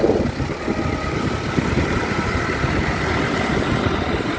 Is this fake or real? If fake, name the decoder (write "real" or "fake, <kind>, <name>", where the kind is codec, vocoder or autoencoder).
real